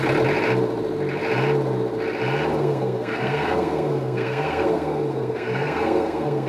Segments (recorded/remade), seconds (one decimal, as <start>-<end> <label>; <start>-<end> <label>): 0.0-2.5 recorded; 2.5-6.5 remade